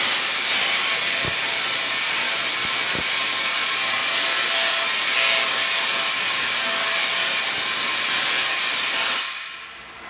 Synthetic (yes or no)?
no